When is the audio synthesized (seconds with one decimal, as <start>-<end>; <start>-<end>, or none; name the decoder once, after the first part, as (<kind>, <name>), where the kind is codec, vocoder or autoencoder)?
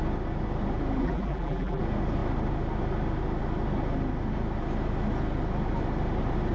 1.0-1.8 (vocoder, BigVGAN v2)